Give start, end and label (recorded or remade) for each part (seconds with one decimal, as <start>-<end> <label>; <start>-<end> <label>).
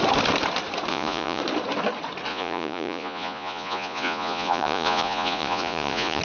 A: 0.0-0.9 recorded; 0.9-1.4 remade; 1.4-2.3 recorded; 2.3-6.2 remade